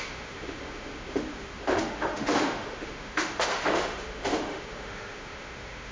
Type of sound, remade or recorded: remade